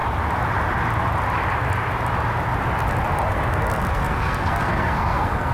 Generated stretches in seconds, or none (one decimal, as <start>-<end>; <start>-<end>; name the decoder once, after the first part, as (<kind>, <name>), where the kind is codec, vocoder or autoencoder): 3.3-5.5 (codec, SNAC)